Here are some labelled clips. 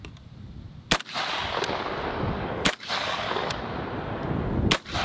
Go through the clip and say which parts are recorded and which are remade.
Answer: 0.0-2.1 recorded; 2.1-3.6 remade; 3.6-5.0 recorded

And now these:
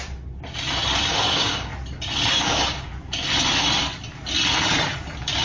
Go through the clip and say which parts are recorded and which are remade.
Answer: 0.0-1.1 recorded; 1.1-1.7 remade; 1.7-2.3 recorded; 2.3-2.9 remade; 2.9-5.4 recorded

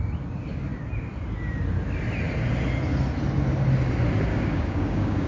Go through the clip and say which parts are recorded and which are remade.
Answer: 0.0-4.3 recorded; 4.3-5.3 remade